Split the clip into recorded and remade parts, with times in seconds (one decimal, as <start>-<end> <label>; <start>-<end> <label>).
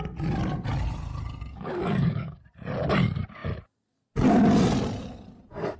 0.0-1.5 recorded; 1.5-2.4 remade; 2.4-5.8 recorded